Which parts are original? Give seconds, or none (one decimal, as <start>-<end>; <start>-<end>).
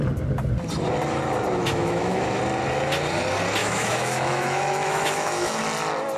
0.0-1.6; 2.4-3.6; 5.6-6.2